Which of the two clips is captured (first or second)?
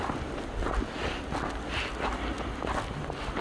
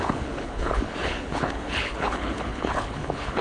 first